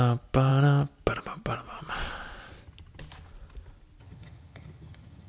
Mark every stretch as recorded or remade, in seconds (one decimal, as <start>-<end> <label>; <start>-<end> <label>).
0.0-4.0 recorded; 4.0-5.3 remade